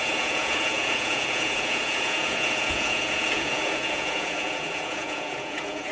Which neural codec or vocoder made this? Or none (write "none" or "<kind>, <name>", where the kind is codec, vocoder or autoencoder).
vocoder, Vocos